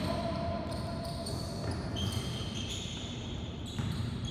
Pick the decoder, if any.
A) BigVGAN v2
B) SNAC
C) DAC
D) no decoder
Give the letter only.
A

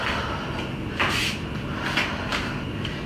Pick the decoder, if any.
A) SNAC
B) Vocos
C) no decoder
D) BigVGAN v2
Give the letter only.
C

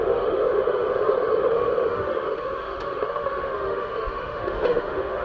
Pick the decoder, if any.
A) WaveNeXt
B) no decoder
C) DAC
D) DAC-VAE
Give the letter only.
D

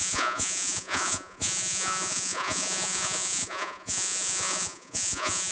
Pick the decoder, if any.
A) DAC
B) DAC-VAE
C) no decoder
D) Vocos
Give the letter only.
D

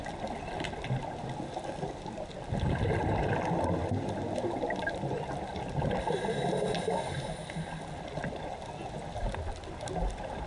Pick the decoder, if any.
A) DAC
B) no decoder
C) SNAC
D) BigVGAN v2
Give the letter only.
B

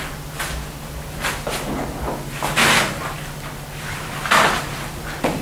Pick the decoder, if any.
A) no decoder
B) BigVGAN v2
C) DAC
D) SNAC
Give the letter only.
A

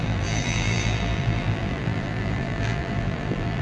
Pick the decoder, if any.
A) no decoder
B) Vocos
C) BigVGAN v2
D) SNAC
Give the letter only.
C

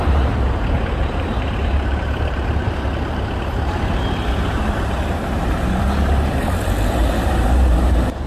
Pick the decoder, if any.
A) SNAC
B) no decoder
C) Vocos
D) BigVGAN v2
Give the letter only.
D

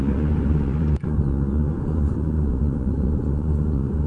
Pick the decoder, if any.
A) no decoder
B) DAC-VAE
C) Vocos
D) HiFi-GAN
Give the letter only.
C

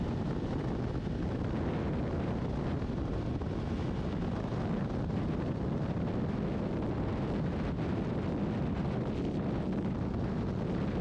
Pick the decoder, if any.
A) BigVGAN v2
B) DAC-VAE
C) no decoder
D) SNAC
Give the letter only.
C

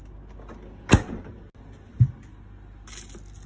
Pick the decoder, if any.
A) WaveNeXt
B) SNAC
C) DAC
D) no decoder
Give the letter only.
D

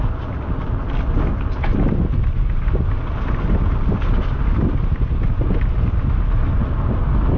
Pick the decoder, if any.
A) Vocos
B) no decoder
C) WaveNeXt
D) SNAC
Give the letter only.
B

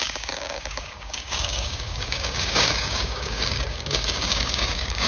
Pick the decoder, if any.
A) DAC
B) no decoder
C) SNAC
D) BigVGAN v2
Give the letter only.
A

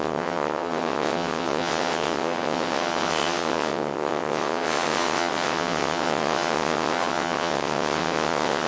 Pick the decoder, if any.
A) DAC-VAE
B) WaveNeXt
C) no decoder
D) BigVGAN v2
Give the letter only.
B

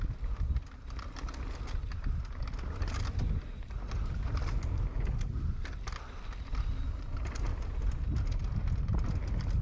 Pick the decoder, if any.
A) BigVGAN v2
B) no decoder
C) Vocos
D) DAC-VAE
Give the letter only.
B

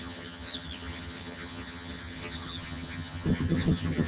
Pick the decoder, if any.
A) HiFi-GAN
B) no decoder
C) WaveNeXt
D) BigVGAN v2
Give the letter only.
A